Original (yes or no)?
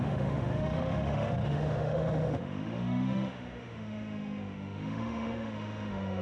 no